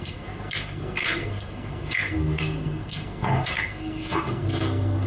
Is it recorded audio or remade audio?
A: remade